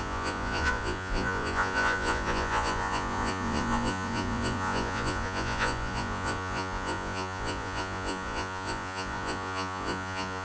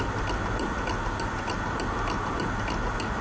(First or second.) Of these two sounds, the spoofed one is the first